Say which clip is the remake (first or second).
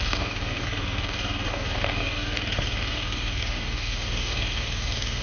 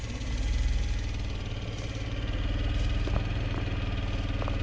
first